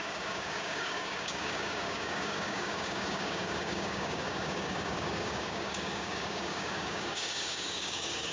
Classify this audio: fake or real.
fake